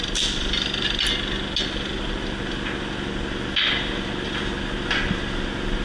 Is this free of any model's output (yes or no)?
yes